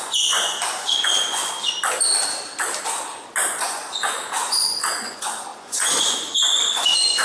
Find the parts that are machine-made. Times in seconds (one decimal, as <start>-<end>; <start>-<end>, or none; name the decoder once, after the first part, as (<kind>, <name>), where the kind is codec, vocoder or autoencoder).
0.0-1.4 (vocoder, Vocos); 3.5-7.2